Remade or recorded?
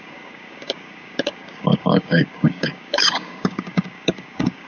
remade